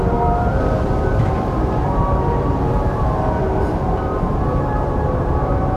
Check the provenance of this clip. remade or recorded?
remade